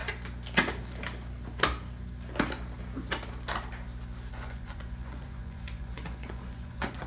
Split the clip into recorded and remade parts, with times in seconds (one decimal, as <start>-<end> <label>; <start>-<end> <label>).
0.0-4.3 recorded; 4.3-7.1 remade